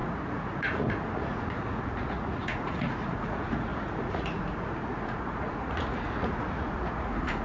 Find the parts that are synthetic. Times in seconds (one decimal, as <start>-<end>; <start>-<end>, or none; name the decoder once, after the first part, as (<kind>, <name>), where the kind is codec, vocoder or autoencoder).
0.0-7.4 (vocoder, Vocos)